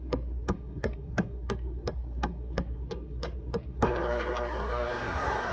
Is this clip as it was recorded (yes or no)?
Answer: no